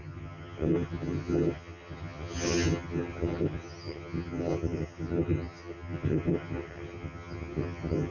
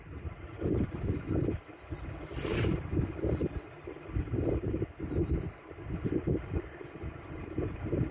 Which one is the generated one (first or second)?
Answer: first